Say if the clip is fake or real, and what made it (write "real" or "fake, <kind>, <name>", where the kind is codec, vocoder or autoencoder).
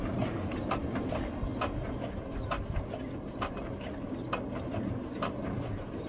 real